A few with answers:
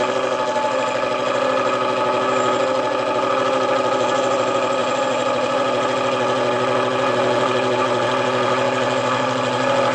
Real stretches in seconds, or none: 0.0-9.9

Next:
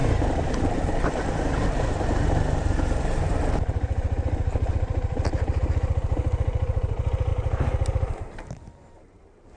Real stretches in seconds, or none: none

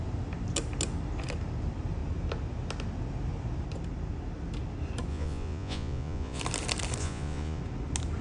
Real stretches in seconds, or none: 0.0-5.1; 6.4-7.0; 7.6-8.2

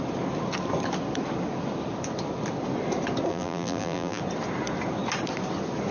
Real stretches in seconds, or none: 0.0-3.3; 4.2-5.9

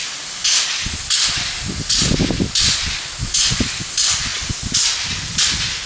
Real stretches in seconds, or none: 0.0-5.9

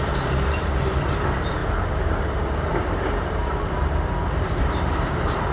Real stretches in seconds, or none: none

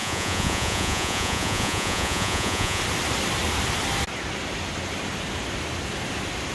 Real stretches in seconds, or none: 2.8-6.5